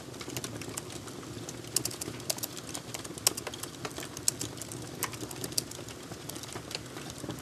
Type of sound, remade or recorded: recorded